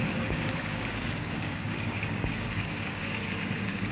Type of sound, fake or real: fake